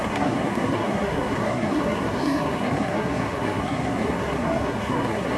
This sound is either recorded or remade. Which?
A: remade